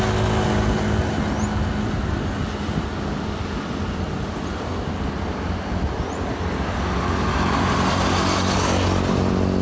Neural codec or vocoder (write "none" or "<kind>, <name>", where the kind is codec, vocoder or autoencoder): none